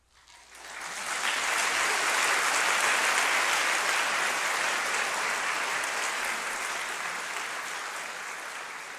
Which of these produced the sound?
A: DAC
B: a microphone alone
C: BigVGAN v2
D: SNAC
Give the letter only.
B